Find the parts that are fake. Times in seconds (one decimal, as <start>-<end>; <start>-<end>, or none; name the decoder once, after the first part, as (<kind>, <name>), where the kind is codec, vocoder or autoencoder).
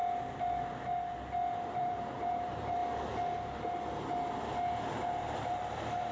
1.7-2.8 (vocoder, BigVGAN v2); 5.2-6.1